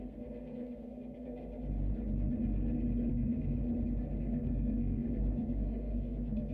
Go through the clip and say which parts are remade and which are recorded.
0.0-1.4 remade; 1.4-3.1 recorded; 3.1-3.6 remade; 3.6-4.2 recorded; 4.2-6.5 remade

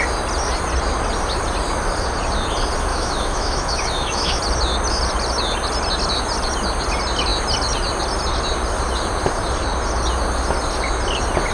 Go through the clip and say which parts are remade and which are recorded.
0.0-2.9 recorded; 2.9-4.4 remade; 4.4-11.5 recorded

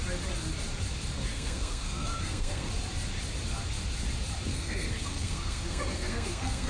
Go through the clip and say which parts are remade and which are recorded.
0.0-1.3 recorded; 1.3-2.7 remade; 2.7-4.5 recorded; 4.5-6.7 remade